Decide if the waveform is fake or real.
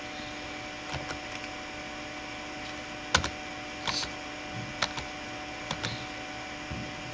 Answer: real